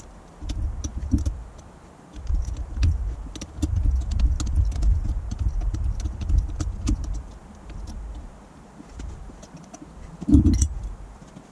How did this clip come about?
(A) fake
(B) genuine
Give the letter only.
B